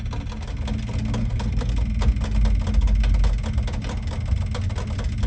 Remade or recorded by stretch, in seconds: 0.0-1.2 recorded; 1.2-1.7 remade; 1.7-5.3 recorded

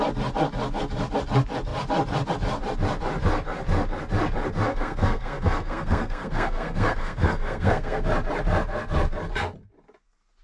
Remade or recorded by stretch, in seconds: 0.0-4.7 recorded; 4.7-8.1 remade; 8.1-10.4 recorded

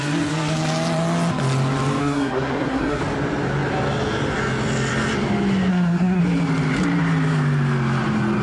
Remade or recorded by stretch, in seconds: 0.0-2.0 recorded; 2.0-3.0 remade; 3.0-5.7 recorded; 5.7-6.2 remade; 6.2-8.4 recorded

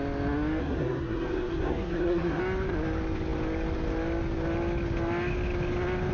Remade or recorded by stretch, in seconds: 0.0-0.6 recorded; 0.6-2.4 remade; 2.4-6.1 recorded

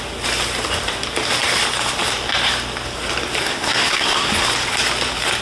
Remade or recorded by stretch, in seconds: 0.0-3.4 recorded; 3.4-4.3 remade; 4.3-5.4 recorded

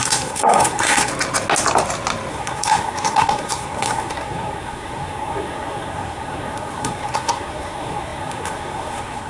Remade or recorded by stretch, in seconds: 0.0-1.1 remade; 1.1-2.3 recorded; 2.3-9.3 remade

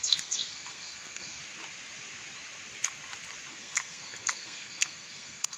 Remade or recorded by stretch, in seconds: 0.0-1.4 remade; 1.4-3.5 recorded; 3.5-5.6 remade